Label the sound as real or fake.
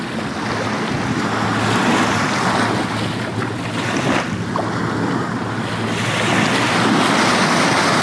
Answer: real